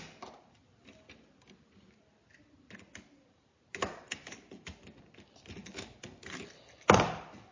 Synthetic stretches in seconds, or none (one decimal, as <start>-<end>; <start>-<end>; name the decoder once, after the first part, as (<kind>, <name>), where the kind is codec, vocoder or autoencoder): none